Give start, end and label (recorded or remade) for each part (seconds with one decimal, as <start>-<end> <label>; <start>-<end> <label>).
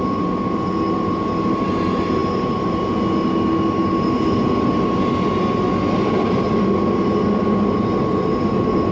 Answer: 0.0-8.9 recorded